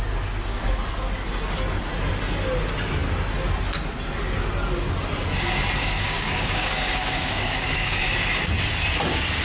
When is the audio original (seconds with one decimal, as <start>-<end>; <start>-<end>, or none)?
0.0-5.8; 8.0-9.4